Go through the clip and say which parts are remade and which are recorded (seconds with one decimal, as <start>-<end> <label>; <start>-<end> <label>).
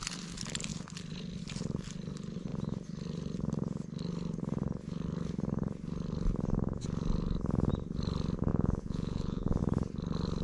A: 0.0-8.5 recorded; 8.5-9.6 remade; 9.6-10.4 recorded